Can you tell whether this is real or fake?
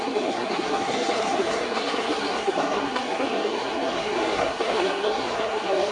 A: fake